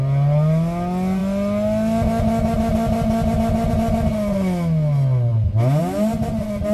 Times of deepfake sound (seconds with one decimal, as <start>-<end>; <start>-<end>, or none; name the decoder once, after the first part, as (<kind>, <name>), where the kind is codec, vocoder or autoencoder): none